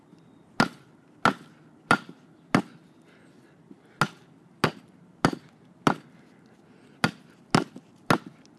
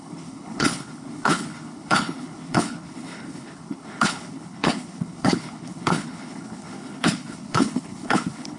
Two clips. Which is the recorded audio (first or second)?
first